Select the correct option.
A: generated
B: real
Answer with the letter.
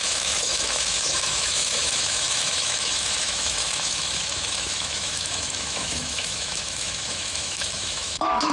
A